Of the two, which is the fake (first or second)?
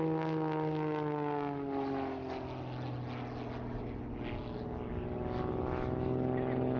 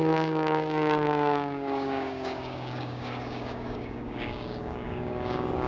second